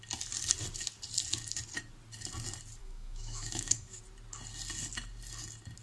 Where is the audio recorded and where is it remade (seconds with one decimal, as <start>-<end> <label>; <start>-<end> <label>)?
0.0-2.8 recorded; 2.8-4.0 remade; 4.0-5.8 recorded

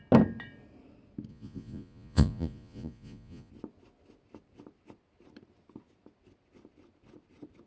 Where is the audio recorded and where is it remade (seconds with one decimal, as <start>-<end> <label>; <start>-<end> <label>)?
0.0-1.3 recorded; 1.3-3.5 remade; 3.5-7.7 recorded

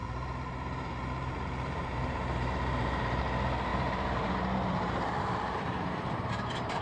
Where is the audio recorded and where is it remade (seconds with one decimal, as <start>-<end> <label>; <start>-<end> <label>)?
0.0-3.2 remade; 3.2-3.7 recorded; 3.7-6.8 remade

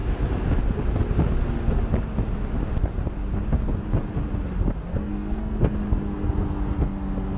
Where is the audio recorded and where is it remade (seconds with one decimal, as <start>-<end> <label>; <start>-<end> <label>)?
0.0-4.9 recorded; 4.9-5.7 remade; 5.7-7.4 recorded

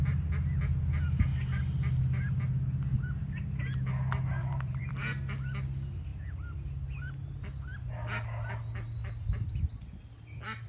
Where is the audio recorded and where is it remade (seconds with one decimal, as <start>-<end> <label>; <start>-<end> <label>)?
0.0-4.4 recorded; 4.4-4.9 remade; 4.9-10.7 recorded